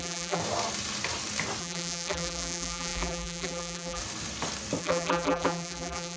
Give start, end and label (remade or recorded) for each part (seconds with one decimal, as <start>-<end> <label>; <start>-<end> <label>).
0.0-0.4 remade; 0.4-1.6 recorded; 1.6-4.0 remade; 4.0-4.8 recorded; 4.8-6.2 remade